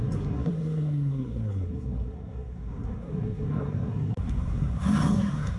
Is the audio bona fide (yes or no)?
no